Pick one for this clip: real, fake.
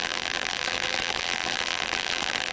fake